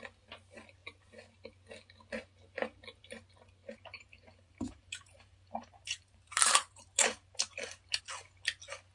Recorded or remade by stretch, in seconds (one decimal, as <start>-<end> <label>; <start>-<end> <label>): 0.0-3.6 recorded; 3.6-8.0 remade; 8.0-8.9 recorded